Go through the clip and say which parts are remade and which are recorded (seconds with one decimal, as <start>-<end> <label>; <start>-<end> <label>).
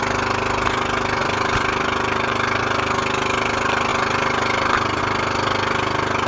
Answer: 0.0-1.2 recorded; 1.2-2.6 remade; 2.6-3.9 recorded; 3.9-5.0 remade; 5.0-6.3 recorded